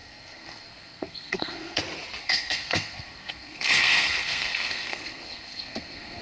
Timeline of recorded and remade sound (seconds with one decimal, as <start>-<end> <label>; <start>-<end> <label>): 0.0-1.8 remade; 1.8-2.2 recorded; 2.2-6.2 remade